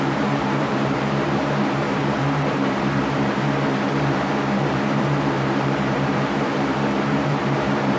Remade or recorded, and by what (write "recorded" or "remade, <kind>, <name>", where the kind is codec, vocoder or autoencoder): remade, vocoder, BigVGAN v2